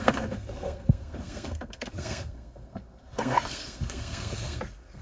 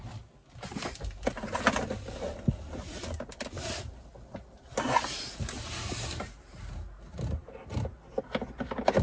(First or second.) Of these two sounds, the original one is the second